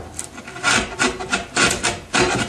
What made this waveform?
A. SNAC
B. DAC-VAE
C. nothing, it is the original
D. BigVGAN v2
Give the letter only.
C